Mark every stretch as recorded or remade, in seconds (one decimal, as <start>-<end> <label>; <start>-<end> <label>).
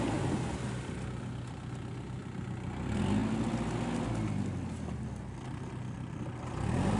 0.0-7.0 recorded